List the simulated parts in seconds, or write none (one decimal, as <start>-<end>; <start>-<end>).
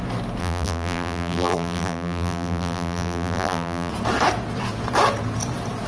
0.4-3.9